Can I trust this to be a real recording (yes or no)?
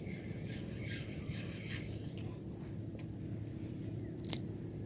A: no